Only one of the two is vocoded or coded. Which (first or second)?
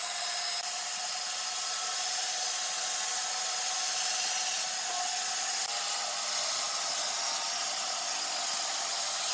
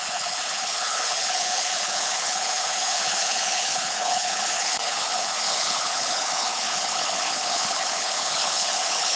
second